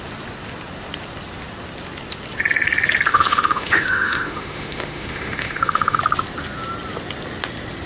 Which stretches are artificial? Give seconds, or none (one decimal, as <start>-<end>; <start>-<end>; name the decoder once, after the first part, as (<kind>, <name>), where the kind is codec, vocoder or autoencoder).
3.1-6.0 (autoencoder, DAC-VAE)